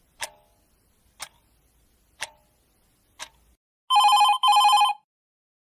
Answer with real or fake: real